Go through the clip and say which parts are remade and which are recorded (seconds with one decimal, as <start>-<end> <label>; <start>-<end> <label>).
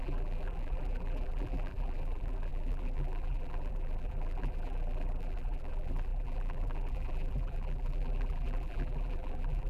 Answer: 0.0-9.7 remade